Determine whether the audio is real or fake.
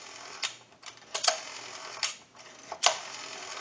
real